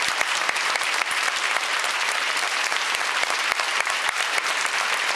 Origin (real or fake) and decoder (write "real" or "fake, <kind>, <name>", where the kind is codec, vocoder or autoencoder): fake, vocoder, BigVGAN v2